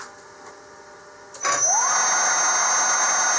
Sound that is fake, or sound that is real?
real